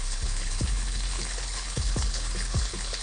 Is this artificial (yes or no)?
yes